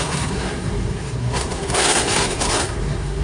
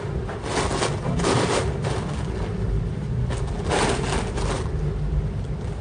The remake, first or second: first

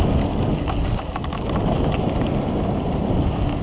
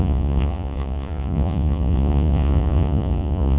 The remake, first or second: second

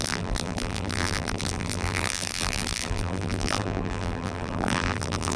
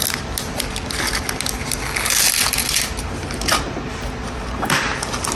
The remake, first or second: first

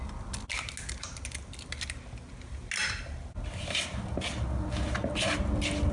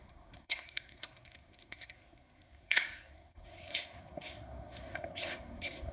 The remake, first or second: second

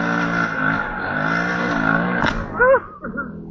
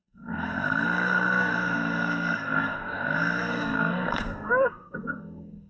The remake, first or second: second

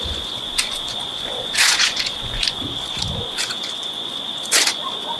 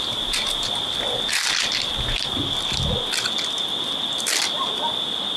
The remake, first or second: first